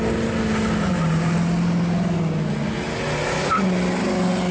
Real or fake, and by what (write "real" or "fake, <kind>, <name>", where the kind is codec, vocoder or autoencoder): real